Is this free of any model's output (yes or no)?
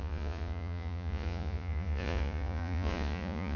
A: no